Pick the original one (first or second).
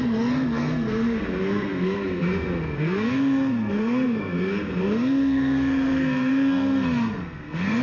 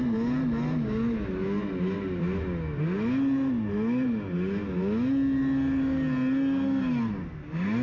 second